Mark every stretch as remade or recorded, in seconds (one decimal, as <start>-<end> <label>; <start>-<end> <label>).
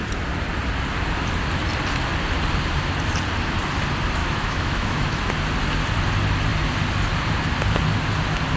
0.0-4.2 recorded; 4.2-5.2 remade; 5.2-8.6 recorded